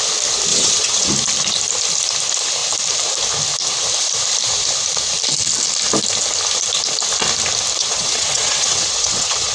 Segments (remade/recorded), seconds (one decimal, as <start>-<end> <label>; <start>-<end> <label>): 0.0-0.5 recorded; 0.5-1.1 remade; 1.1-7.8 recorded; 7.8-9.5 remade